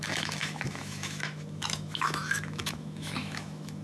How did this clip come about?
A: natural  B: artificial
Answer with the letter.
B